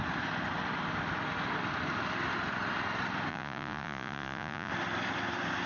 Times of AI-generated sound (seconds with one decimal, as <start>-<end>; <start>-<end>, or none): 3.3-4.7